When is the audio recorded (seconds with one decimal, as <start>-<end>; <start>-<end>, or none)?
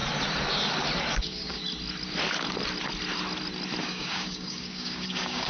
0.0-1.2; 1.6-3.8